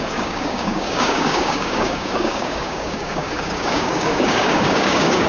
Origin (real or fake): fake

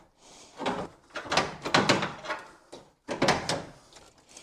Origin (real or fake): real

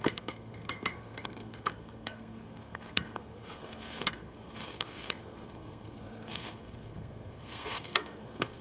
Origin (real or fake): fake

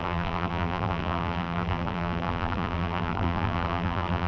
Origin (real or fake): fake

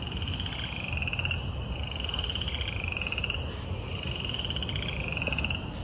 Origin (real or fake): real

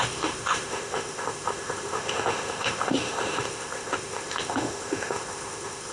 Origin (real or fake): fake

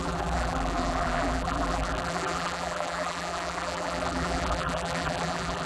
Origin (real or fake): fake